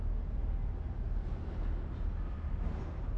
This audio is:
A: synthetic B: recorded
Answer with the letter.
B